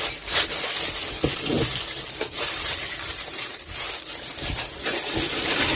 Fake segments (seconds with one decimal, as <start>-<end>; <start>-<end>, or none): 1.7-5.2